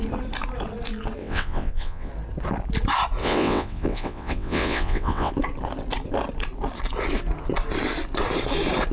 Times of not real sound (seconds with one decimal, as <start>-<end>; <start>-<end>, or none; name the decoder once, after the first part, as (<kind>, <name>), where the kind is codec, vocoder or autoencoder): 1.2-2.1 (vocoder, WaveNeXt); 3.2-5.3